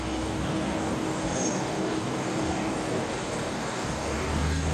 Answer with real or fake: fake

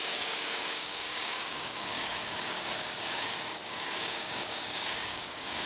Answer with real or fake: fake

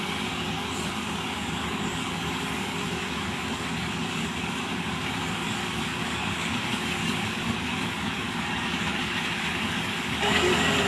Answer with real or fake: fake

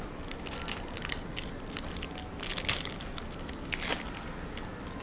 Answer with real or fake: real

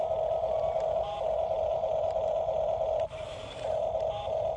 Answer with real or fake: real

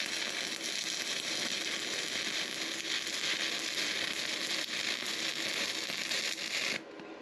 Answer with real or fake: real